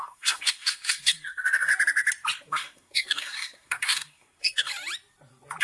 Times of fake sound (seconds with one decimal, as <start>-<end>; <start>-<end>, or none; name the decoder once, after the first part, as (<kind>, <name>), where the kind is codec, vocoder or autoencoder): 0.0-1.7 (codec, SNAC); 2.5-4.7